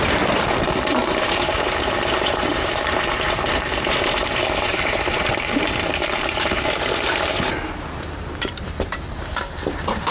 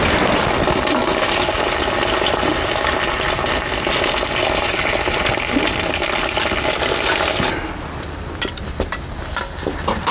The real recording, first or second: second